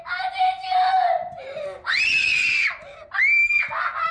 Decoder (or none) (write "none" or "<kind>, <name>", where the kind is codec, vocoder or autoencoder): none